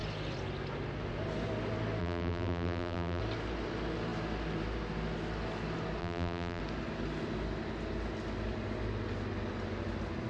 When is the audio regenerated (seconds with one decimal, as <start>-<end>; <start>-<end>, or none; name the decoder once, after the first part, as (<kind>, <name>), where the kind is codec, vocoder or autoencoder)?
2.0-3.2 (vocoder, BigVGAN v2); 6.0-6.6